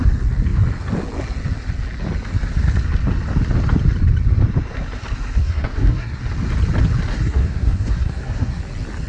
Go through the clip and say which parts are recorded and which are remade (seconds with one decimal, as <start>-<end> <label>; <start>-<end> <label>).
0.0-5.4 recorded; 5.4-6.2 remade; 6.2-7.1 recorded; 7.1-8.6 remade; 8.6-9.1 recorded

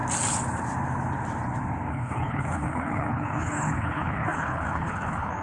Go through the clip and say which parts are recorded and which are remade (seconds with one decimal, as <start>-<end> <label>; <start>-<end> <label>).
0.0-1.9 recorded; 1.9-5.4 remade

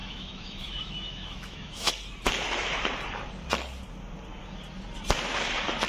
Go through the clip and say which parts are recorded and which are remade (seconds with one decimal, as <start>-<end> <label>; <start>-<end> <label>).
0.0-1.9 remade; 1.9-5.9 recorded

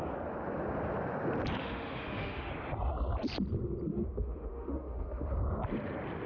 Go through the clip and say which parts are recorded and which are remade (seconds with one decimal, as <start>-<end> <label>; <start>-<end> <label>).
0.0-1.6 recorded; 1.6-2.5 remade; 2.5-3.9 recorded; 3.9-5.3 remade; 5.3-6.3 recorded

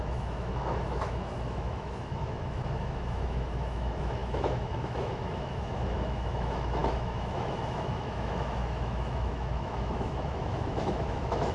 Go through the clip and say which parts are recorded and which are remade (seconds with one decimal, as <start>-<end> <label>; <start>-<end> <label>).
0.0-11.5 remade

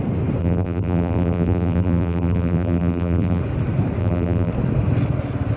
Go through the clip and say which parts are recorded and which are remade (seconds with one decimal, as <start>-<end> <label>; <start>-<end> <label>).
0.0-0.4 recorded; 0.4-3.4 remade; 3.4-4.0 recorded; 4.0-4.5 remade; 4.5-5.6 recorded